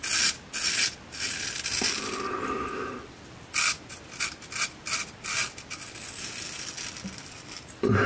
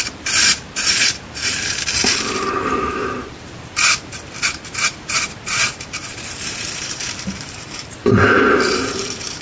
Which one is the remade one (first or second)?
second